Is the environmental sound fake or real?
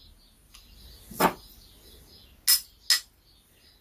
real